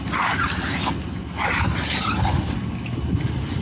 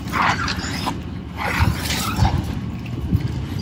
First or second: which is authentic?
first